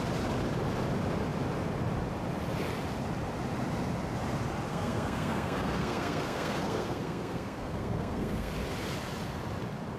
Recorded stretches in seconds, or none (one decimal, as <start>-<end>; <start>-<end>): 0.0-4.7; 8.5-10.0